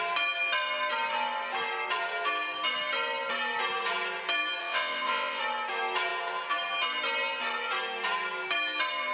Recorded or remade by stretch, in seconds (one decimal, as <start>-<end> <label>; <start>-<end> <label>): 0.0-4.6 recorded; 4.6-5.4 remade; 5.4-9.1 recorded